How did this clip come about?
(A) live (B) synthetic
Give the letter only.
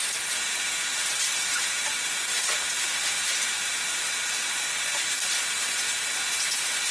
A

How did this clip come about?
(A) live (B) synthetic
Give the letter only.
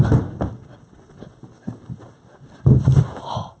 A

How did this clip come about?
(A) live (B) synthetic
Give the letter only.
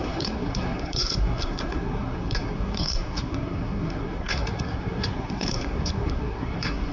B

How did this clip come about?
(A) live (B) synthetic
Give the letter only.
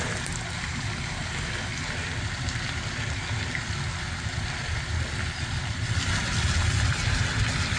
A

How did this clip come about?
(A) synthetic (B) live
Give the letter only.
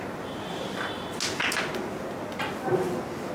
B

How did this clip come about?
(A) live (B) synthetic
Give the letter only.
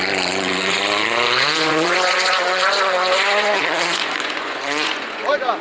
B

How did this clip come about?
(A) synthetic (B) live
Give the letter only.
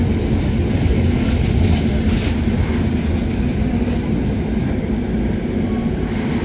B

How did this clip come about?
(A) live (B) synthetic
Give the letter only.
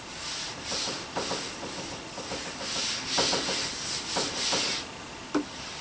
A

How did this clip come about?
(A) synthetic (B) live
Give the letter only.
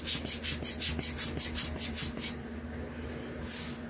B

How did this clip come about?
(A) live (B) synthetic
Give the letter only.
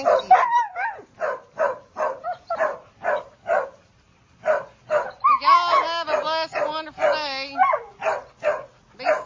A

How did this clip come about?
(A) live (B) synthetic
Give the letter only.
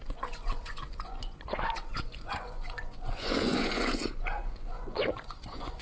B